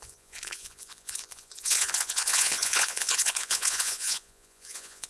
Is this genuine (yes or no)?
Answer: no